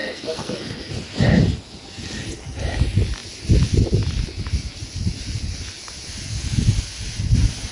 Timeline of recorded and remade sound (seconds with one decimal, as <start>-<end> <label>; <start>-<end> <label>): 0.0-0.9 remade; 0.9-7.7 recorded